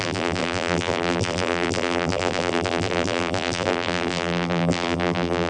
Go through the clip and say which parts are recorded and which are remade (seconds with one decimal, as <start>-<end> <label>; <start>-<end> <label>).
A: 0.0-5.5 remade